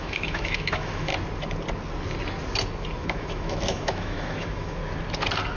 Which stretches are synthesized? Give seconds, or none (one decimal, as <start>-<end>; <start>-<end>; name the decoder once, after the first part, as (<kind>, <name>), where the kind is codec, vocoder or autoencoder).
0.0-1.1 (autoencoder, DAC-VAE); 3.0-4.8